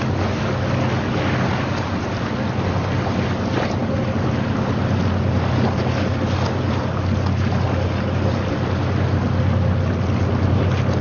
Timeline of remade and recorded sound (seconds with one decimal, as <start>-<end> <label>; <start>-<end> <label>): 0.0-11.0 recorded